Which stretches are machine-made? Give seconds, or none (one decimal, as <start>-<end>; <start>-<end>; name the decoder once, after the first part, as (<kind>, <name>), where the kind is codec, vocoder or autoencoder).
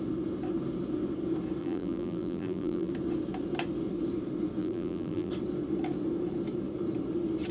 1.6-2.9 (vocoder, BigVGAN v2); 4.6-5.3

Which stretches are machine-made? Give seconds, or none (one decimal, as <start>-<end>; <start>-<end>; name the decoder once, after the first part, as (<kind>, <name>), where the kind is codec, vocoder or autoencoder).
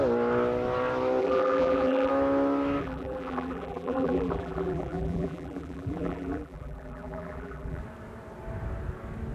1.2-2.1 (vocoder, BigVGAN v2); 2.8-7.8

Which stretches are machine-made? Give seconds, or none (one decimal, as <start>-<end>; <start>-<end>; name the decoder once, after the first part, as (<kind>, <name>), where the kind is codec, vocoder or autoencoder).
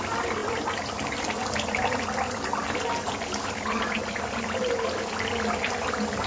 none